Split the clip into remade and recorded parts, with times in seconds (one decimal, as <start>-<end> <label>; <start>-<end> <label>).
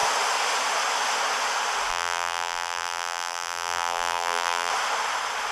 0.0-1.9 recorded; 1.9-4.7 remade; 4.7-5.5 recorded